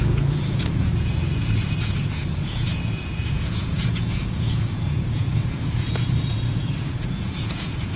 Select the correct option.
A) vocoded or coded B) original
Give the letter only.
A